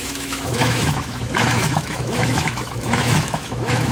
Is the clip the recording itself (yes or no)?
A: no